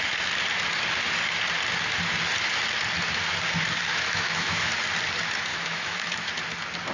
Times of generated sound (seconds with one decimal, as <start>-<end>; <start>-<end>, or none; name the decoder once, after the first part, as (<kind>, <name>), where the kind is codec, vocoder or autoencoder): 3.9-4.6 (autoencoder, DAC-VAE); 5.5-6.3